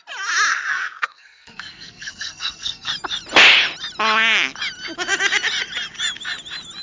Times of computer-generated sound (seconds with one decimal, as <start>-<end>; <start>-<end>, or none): 0.5-2.9